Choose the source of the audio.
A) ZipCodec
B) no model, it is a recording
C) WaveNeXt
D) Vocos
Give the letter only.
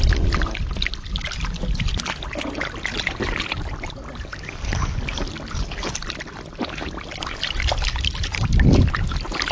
B